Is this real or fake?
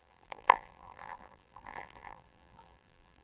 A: fake